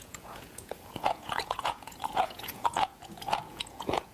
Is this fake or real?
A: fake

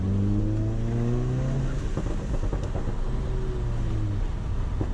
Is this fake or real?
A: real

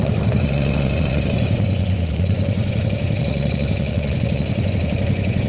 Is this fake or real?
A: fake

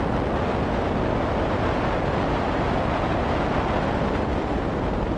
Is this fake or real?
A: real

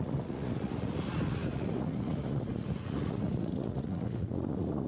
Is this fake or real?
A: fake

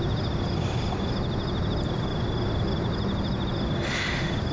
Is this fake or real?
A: real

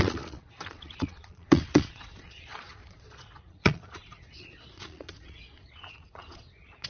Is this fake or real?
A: fake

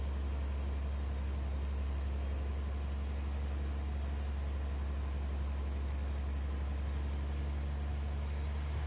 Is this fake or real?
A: real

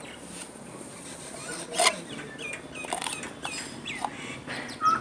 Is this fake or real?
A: real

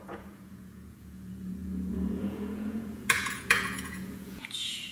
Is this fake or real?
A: fake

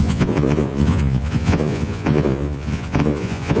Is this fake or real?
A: fake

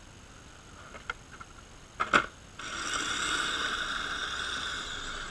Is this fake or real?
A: real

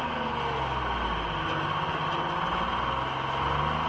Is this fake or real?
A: real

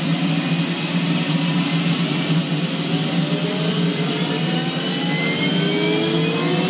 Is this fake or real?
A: real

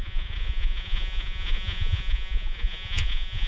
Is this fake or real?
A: fake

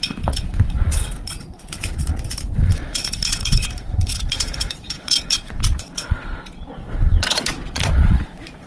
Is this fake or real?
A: fake